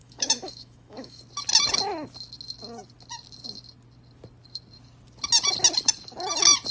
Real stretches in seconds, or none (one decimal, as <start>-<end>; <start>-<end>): 1.2-6.7

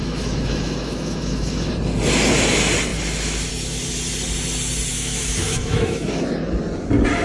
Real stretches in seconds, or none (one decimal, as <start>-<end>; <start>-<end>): 1.7-4.9; 6.2-7.2

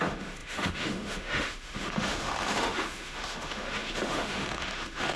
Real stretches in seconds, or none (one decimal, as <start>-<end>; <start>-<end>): none

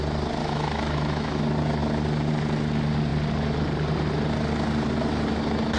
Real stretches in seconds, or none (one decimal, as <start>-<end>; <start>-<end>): 0.0-0.4; 1.4-5.8

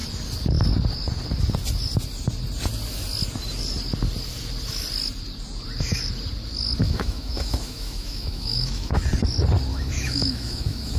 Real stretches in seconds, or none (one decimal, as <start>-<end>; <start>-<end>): 0.0-6.8; 9.0-9.7

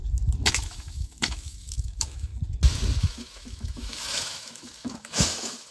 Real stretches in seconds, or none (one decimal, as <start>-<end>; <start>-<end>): 0.0-0.5; 2.3-3.0

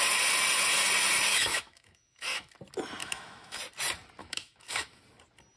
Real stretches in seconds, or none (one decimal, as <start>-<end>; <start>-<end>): 0.0-1.3; 2.5-3.0; 3.6-4.2; 5.0-5.6

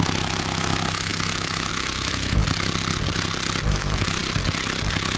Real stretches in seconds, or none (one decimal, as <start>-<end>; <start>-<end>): 2.4-3.7; 4.2-5.2